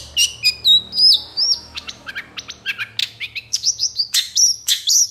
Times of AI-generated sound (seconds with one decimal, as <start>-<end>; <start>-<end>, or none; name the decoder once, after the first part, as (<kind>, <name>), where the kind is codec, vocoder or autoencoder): 1.3-2.1 (autoencoder, DAC-VAE); 3.0-5.1